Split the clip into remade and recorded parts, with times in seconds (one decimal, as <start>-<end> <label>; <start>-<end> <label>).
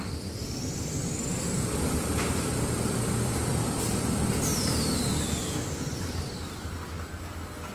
0.0-7.7 remade